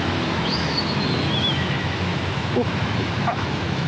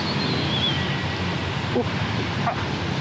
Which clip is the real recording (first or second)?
second